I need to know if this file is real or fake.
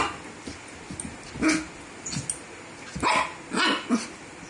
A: real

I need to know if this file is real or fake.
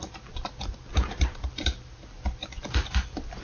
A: real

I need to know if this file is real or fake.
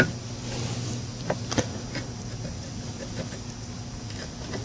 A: real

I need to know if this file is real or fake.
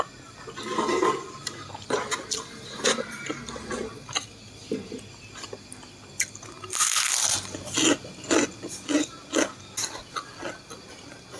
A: real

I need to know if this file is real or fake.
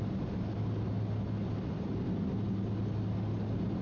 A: real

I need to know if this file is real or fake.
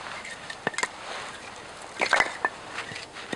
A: real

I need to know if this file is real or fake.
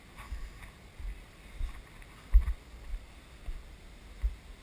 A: real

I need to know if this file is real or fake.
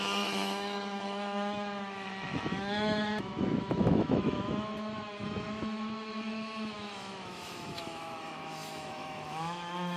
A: fake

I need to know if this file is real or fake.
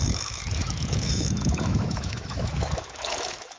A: fake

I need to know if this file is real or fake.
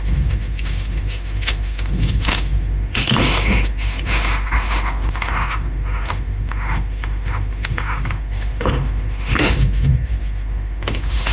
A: fake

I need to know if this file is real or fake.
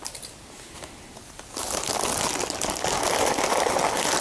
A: real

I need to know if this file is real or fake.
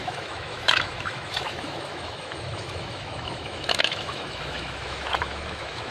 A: fake